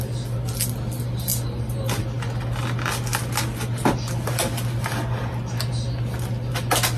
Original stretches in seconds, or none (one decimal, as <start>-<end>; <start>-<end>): 0.0-7.0